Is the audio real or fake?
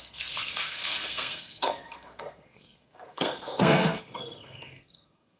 fake